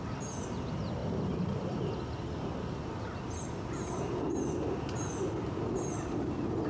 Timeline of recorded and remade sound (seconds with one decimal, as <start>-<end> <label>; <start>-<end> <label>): 0.0-6.7 recorded

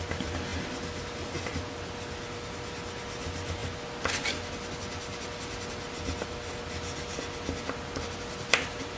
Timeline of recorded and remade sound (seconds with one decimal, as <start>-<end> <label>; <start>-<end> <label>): 0.0-9.0 recorded

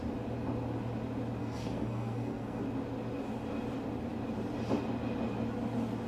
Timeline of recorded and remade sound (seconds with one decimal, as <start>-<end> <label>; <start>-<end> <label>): 0.0-1.4 recorded; 1.4-2.6 remade; 2.6-6.1 recorded